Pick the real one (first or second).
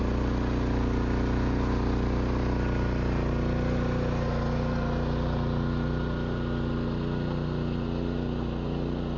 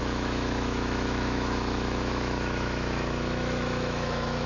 first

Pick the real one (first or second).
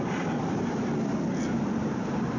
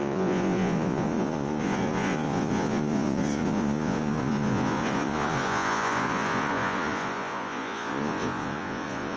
first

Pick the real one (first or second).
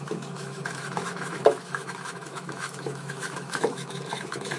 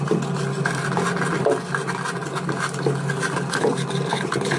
second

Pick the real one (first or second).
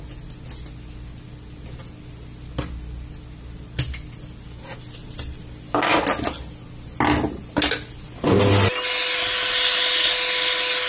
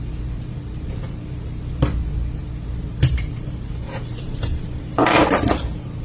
first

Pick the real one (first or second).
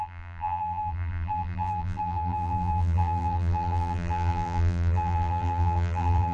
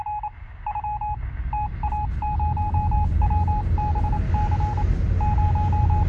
second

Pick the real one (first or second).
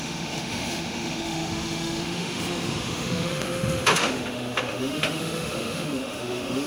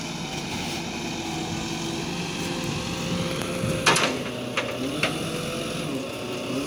second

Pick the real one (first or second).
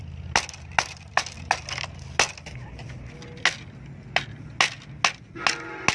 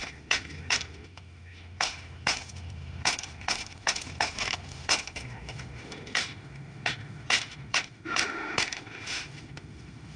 first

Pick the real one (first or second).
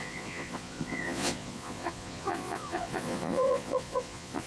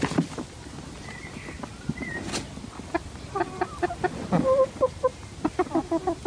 second